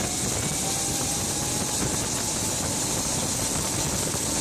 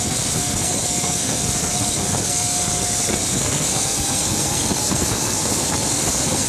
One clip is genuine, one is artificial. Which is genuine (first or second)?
first